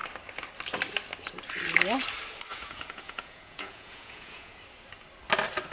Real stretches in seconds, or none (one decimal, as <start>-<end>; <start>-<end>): 0.0-2.5; 4.6-5.7